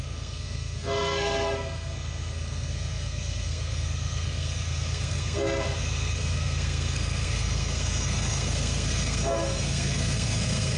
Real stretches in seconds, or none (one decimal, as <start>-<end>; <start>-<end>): none